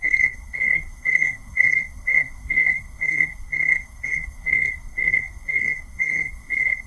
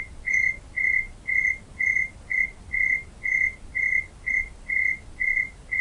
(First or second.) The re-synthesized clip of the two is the first